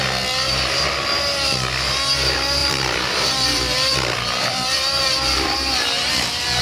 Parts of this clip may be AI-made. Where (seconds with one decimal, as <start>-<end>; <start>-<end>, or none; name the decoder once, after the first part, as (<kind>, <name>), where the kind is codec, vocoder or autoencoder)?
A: 2.6-6.6 (vocoder, BigVGAN v2)

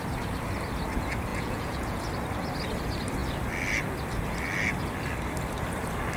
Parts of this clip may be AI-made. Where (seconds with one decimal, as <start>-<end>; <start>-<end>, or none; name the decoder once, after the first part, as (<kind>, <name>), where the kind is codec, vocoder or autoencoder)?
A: 1.3-2.0 (vocoder, Vocos)

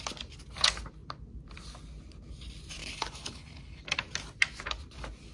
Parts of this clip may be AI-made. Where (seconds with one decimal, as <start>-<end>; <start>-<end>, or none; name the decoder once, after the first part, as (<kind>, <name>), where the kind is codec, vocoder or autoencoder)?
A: 2.8-3.8 (codec, HILCodec)

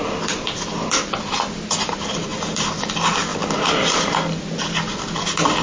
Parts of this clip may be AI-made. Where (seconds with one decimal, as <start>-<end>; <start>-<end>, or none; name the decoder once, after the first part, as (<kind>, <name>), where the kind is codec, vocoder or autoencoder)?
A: none

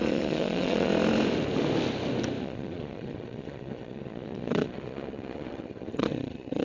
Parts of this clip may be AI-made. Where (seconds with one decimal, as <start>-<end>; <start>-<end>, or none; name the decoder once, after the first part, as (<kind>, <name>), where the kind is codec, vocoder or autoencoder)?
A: 0.0-0.9 (vocoder, Vocos); 2.4-6.6

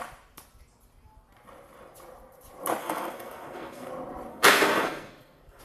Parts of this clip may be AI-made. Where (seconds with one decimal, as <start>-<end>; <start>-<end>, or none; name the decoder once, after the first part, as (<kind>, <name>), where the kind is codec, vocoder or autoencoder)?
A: 2.8-3.9 (codec, SNAC); 4.3-5.6

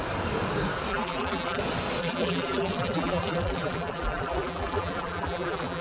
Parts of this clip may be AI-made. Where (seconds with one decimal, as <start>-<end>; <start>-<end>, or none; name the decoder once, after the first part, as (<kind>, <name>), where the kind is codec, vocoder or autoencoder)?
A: 0.9-1.6 (vocoder, BigVGAN v2); 2.0-5.8

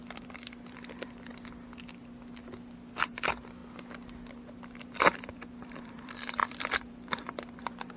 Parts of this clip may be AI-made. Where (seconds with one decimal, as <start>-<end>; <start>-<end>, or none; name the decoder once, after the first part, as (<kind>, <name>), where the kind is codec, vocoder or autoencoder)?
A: 0.0-1.3 (vocoder, BigVGAN v2); 3.1-3.6; 4.9-8.0